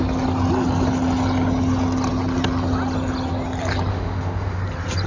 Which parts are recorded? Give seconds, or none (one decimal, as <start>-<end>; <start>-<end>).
0.0-3.9; 4.6-5.1